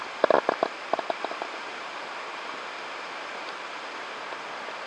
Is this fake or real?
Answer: real